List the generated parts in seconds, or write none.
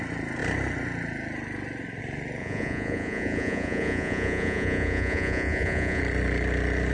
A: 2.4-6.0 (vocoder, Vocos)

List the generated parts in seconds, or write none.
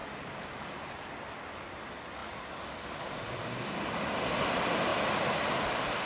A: none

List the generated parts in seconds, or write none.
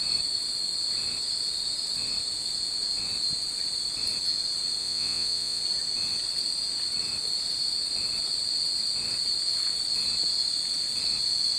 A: 4.8-5.6 (vocoder, Vocos)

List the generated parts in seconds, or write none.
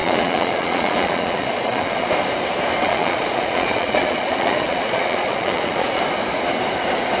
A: 0.0-2.1 (vocoder, Vocos); 2.8-6.0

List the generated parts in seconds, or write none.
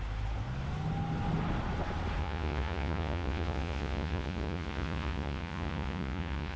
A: 2.2-6.6 (vocoder, Vocos)